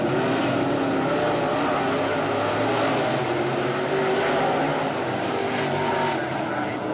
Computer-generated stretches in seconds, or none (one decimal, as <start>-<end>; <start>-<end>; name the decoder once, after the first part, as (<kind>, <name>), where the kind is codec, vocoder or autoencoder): none